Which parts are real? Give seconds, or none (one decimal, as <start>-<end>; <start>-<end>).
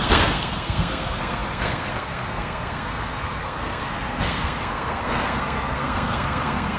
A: none